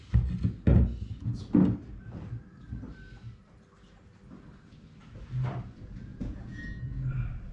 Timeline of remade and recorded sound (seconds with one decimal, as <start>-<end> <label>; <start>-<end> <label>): 0.0-6.1 recorded; 6.1-6.8 remade; 6.8-7.5 recorded